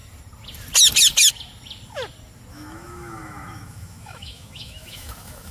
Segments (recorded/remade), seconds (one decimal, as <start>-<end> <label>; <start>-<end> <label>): 0.0-2.5 recorded; 2.5-5.5 remade